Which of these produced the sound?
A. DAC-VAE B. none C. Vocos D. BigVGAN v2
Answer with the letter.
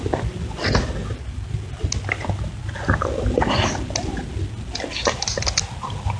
B